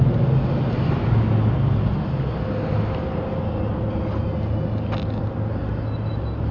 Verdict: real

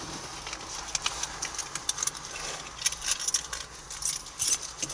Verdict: real